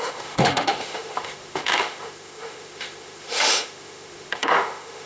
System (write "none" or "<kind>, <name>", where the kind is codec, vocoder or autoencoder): autoencoder, DAC-VAE